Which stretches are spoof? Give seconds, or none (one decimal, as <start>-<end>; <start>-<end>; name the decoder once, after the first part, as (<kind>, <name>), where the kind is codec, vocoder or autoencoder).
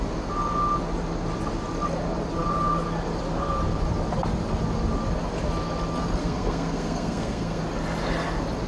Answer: 6.2-7.6 (codec, SNAC)